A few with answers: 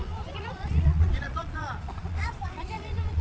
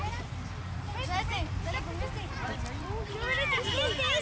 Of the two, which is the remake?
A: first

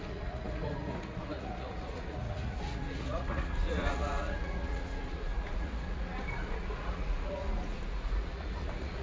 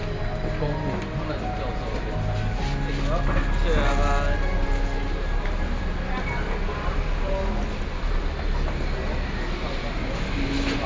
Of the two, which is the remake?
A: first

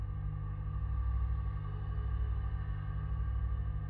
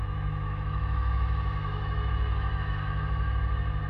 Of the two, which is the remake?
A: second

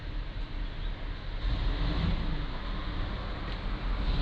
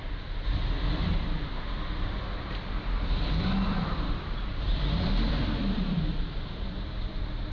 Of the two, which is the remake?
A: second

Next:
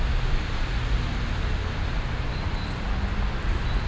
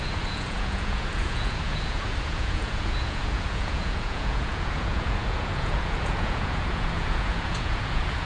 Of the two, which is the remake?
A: second